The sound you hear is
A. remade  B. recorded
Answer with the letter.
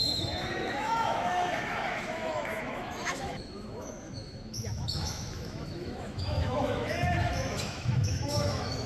A